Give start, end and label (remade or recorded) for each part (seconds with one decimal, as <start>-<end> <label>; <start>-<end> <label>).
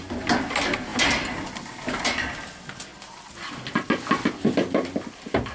0.0-5.5 recorded